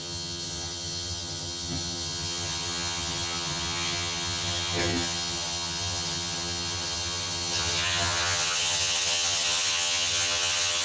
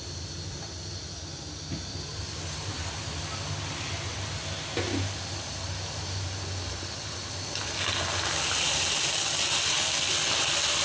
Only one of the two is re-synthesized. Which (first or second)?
first